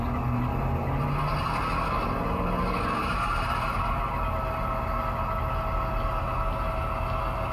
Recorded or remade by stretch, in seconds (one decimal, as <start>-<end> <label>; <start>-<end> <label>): 0.0-3.0 recorded; 3.0-3.8 remade; 3.8-7.5 recorded